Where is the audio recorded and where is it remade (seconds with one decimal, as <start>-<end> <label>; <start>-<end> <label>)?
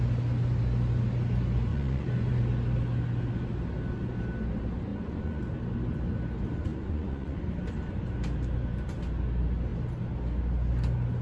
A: 0.0-1.7 recorded; 1.7-2.4 remade; 2.4-4.9 recorded; 4.9-5.4 remade; 5.4-6.7 recorded; 6.7-7.4 remade; 7.4-11.2 recorded